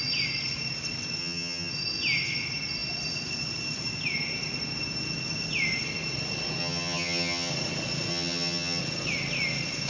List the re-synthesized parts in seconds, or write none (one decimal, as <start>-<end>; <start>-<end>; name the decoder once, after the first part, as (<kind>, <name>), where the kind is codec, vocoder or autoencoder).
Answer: 1.2-1.7 (vocoder, HiFi-GAN); 6.6-7.5; 8.1-8.8